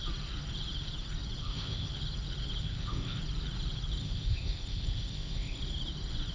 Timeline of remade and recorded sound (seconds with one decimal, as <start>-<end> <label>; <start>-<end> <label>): 0.0-1.4 recorded; 1.4-1.9 remade; 1.9-2.6 recorded; 2.6-3.2 remade; 3.2-4.0 recorded; 4.0-5.6 remade; 5.6-6.3 recorded